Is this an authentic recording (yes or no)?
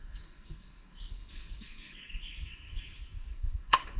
no